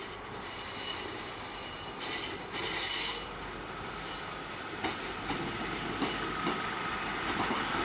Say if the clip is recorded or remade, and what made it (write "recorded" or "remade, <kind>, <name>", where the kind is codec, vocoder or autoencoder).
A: recorded